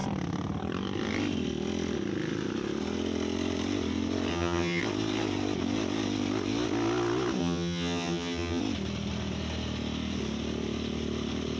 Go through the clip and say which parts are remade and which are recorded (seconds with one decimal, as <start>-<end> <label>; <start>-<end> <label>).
0.0-4.3 recorded; 4.3-4.8 remade; 4.8-7.4 recorded; 7.4-8.6 remade; 8.6-11.6 recorded